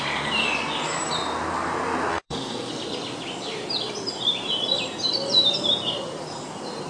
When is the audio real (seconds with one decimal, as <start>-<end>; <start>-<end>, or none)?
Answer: 0.0-2.1; 2.7-6.9